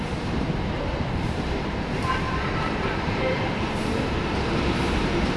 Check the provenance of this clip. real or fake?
fake